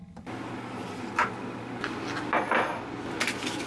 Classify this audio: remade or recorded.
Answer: recorded